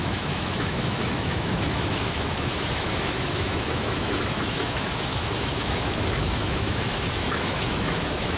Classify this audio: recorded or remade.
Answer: remade